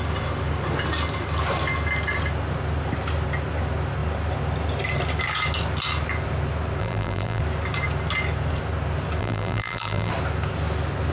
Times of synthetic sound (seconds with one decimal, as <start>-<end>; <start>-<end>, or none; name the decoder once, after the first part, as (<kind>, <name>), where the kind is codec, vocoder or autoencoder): 6.8-7.4 (vocoder, BigVGAN v2); 9.2-10.1